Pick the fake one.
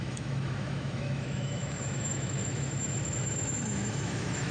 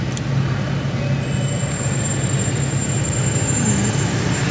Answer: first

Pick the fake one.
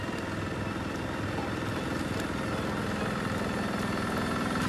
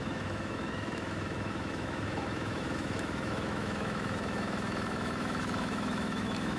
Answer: second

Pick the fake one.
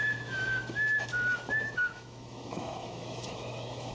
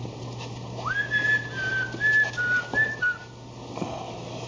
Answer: first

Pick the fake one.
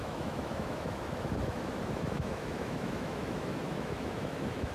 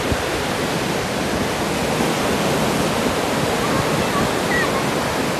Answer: first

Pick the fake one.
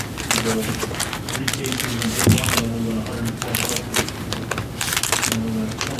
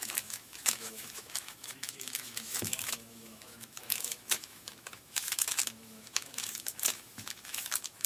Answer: second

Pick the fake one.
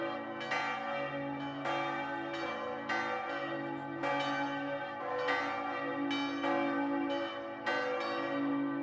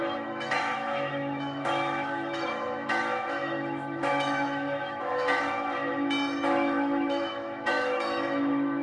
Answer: second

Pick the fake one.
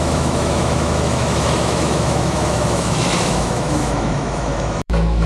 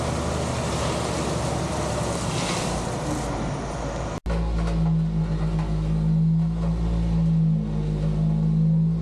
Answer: first